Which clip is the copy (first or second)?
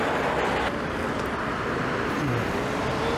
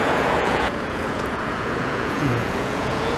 second